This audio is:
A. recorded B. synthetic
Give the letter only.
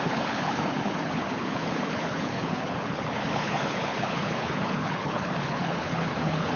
B